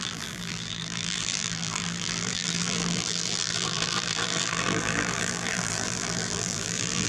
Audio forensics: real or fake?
fake